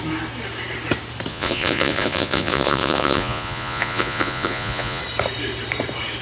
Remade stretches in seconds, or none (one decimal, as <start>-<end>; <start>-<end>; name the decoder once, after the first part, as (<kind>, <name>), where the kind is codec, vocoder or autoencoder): 1.3-5.0 (vocoder, Vocos)